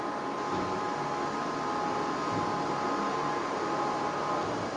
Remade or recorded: recorded